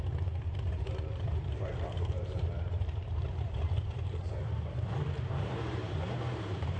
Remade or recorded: remade